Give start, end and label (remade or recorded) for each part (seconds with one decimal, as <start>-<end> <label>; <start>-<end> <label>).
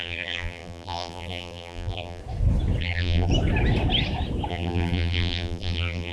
0.0-2.2 remade; 2.2-2.8 recorded; 2.8-3.3 remade; 3.3-4.5 recorded; 4.5-6.1 remade